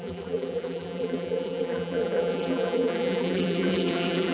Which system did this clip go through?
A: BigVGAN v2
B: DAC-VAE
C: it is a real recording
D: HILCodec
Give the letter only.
A